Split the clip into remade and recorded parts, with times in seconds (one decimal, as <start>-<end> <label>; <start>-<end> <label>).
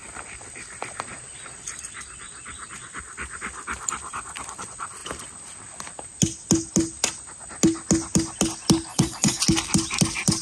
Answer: 0.0-8.9 recorded; 8.9-9.4 remade; 9.4-10.4 recorded